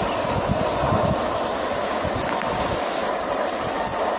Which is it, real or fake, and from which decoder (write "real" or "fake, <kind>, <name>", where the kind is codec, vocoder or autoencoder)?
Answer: real